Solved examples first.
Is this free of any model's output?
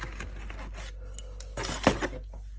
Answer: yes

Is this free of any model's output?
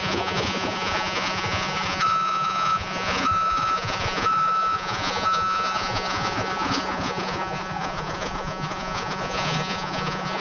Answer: no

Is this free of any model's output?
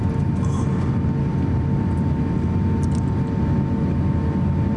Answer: yes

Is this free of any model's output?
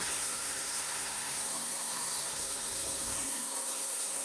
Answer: no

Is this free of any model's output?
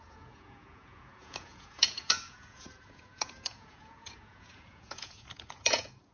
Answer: no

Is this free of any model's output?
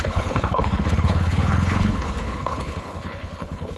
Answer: no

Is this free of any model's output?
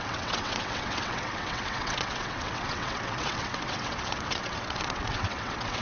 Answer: no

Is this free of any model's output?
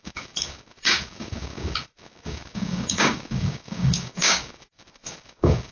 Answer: no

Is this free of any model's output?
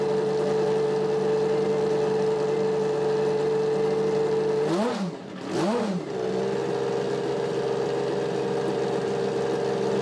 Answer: yes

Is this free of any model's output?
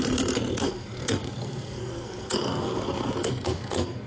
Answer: no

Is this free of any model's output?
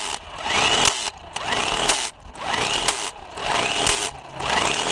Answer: yes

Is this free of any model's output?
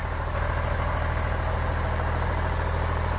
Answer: yes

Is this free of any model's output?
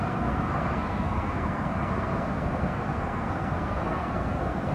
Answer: no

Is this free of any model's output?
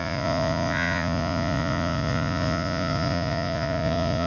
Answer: no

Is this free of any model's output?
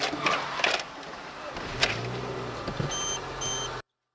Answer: yes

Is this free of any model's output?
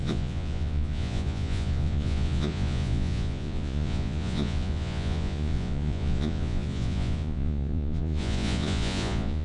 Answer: no